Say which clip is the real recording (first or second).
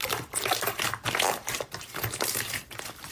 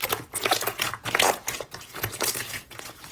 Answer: first